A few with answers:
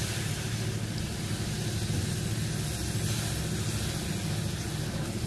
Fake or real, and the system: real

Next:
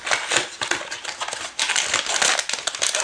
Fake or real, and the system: real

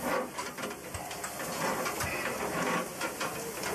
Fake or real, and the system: real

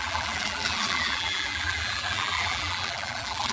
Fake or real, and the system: fake, vocoder, BigVGAN v2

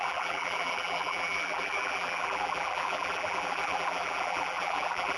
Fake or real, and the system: fake, vocoder, BigVGAN v2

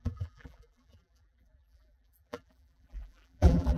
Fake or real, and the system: fake, vocoder, BigVGAN v2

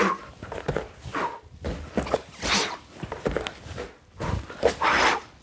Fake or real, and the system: real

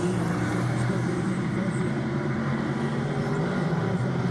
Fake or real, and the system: fake, vocoder, BigVGAN v2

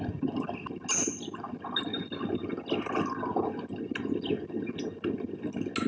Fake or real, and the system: real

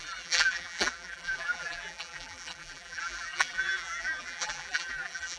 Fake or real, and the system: fake, vocoder, BigVGAN v2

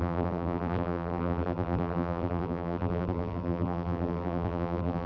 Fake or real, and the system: fake, vocoder, BigVGAN v2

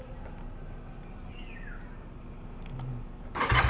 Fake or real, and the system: real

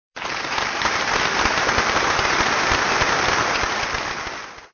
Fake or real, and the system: fake, vocoder, BigVGAN v2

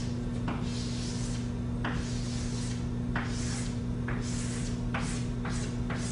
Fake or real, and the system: real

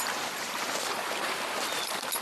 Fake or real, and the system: fake, vocoder, BigVGAN v2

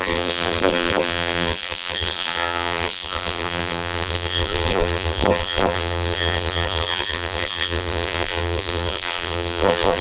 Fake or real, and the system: fake, vocoder, BigVGAN v2